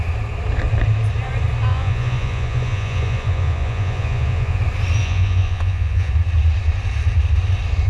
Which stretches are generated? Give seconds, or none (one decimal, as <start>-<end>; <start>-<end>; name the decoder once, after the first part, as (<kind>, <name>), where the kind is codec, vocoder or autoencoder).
1.7-4.6 (vocoder, Vocos); 5.0-6.1